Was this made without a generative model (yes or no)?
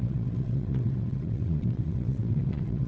no